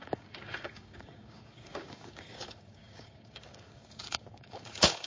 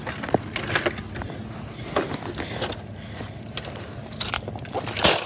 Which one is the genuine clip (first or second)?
second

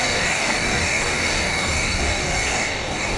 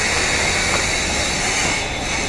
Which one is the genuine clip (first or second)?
second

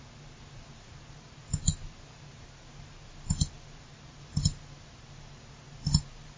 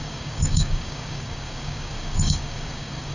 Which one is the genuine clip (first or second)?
first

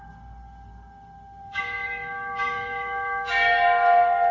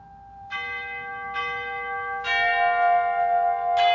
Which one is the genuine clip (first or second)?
second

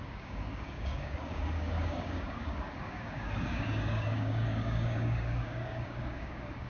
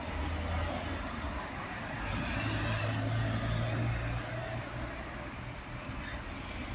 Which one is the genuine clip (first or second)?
second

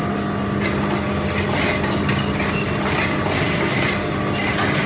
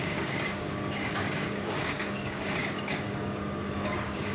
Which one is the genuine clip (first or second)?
first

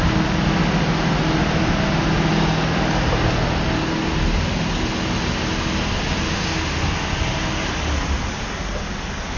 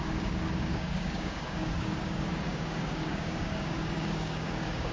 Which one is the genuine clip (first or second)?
first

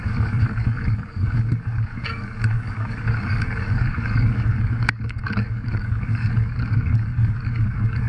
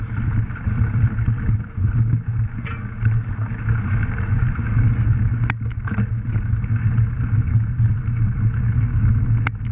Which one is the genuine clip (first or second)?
second